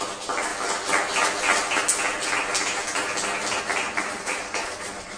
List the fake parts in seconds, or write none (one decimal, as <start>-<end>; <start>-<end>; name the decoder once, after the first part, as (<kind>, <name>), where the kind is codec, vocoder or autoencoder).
4.0-5.2 (vocoder, Vocos)